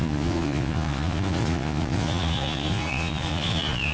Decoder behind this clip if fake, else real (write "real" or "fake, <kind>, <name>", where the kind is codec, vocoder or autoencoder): fake, vocoder, Vocos